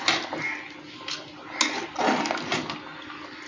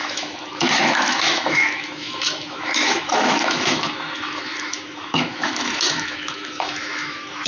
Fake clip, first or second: second